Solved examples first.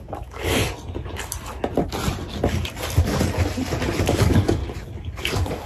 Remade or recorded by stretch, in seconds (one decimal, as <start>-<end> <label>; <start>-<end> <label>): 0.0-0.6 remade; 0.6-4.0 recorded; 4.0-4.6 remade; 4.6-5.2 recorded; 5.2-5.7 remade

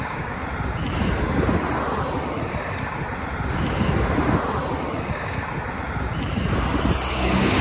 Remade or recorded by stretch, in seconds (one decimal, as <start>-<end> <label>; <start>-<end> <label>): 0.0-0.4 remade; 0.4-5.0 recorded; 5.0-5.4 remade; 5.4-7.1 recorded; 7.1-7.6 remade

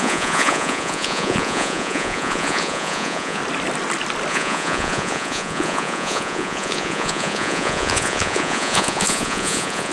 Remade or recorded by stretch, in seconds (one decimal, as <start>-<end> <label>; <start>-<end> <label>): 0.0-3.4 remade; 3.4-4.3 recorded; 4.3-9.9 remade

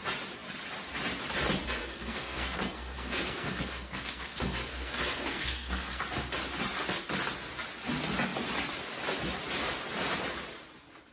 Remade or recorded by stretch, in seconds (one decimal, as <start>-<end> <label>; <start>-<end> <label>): 0.0-1.8 recorded; 1.8-6.0 remade; 6.0-11.1 recorded

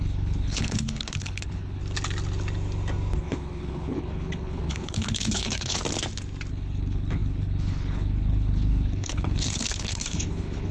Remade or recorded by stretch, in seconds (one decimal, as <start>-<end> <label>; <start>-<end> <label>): 0.0-1.8 remade; 1.8-3.2 recorded; 3.2-5.8 remade; 5.8-6.5 recorded; 6.5-10.7 remade

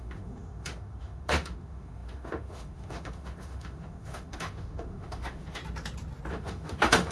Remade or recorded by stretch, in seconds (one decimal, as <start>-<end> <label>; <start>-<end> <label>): 0.0-5.6 remade; 5.6-6.3 recorded; 6.3-7.1 remade

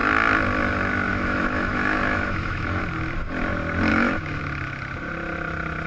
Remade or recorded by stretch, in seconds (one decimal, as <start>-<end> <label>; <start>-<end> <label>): 0.0-1.1 recorded; 1.1-2.8 remade; 2.8-3.9 recorded; 3.9-4.4 remade; 4.4-5.9 recorded